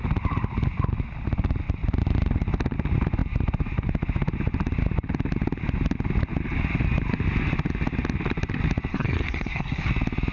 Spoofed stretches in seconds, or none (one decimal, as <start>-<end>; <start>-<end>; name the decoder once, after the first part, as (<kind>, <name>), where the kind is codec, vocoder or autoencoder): 8.9-9.9 (codec, SNAC)

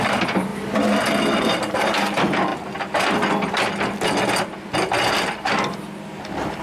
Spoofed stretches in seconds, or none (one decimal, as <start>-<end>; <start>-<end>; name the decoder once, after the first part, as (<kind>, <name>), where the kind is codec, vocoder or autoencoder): none

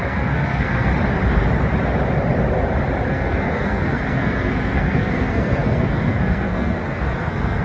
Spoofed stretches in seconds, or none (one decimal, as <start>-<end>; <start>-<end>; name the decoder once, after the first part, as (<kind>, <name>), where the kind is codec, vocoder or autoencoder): 0.0-0.9 (codec, SNAC); 3.1-7.6

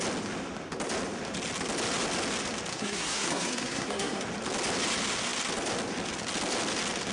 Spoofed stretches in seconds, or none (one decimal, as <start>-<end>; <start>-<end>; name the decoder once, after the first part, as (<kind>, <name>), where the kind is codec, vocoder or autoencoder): 2.7-4.2 (codec, SNAC)

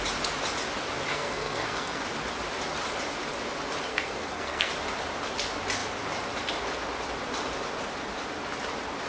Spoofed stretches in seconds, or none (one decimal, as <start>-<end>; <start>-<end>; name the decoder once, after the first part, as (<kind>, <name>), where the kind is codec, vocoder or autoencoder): 1.1-2.0 (codec, SNAC); 3.9-4.7